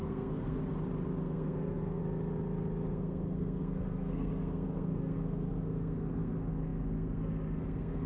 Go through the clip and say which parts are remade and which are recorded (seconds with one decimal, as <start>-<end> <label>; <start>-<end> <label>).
0.0-0.6 remade; 0.6-1.2 recorded; 1.2-2.0 remade; 2.0-2.9 recorded; 2.9-8.1 remade